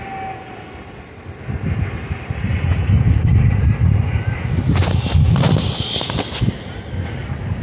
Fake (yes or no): no